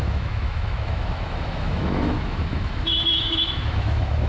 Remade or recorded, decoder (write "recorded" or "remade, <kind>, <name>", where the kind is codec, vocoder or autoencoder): remade, autoencoder, DAC-VAE